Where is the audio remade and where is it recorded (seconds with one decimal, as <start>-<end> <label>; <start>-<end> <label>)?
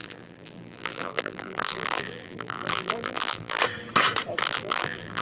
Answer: 0.0-3.6 remade; 3.6-4.4 recorded; 4.4-5.2 remade